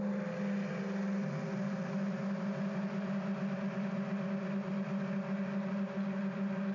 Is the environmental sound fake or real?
real